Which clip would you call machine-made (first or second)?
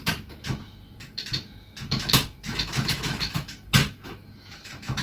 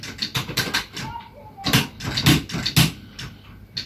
first